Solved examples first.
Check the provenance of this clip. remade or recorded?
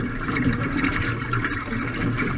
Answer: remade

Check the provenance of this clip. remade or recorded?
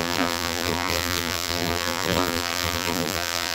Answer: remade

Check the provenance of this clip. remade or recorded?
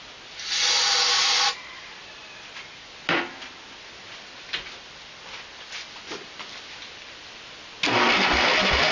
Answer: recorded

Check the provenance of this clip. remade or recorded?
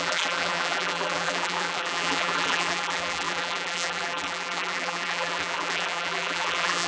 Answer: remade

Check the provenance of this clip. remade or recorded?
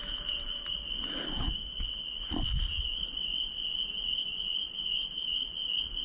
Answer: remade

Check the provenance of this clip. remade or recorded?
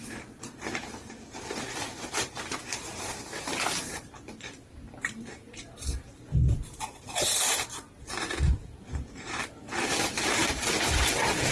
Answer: remade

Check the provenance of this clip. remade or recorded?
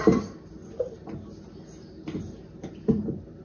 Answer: recorded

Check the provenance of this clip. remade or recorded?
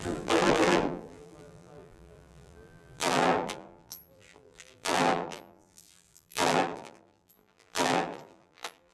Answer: remade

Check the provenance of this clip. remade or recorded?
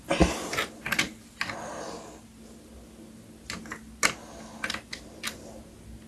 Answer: recorded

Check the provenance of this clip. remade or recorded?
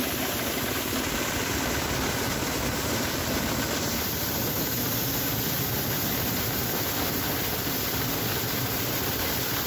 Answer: recorded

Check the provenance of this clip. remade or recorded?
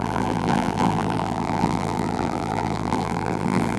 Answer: remade